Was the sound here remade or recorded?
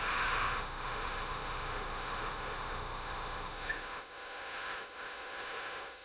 remade